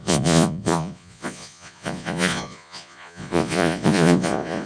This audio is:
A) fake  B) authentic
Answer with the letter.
A